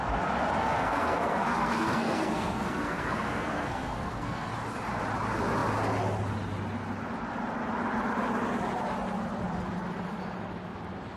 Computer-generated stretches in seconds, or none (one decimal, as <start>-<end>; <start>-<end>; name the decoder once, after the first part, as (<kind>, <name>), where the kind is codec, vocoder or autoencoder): 0.6-4.5 (codec, SNAC)